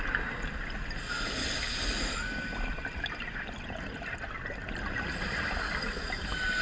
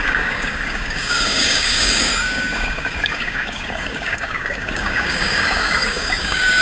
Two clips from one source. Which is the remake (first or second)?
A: second